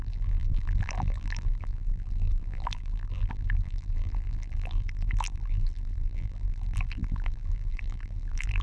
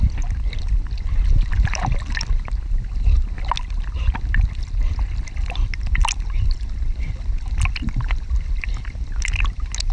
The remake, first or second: first